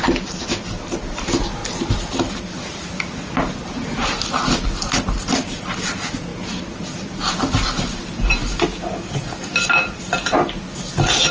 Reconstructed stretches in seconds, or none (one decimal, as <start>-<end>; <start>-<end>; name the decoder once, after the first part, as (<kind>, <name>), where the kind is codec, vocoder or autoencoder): none